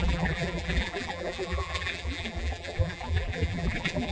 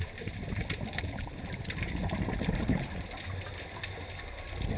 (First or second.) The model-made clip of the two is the first